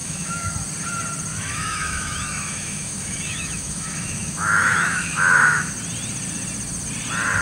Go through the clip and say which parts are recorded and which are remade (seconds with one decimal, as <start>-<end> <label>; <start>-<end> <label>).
0.0-0.5 remade; 0.5-1.3 recorded; 1.3-5.7 remade; 5.7-7.4 recorded